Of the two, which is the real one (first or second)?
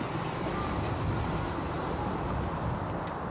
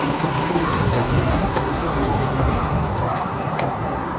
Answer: first